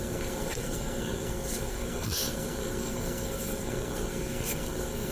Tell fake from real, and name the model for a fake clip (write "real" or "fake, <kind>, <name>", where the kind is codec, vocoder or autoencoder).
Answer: fake, codec, SNAC